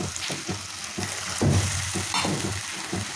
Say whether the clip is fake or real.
real